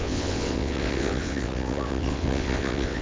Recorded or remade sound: remade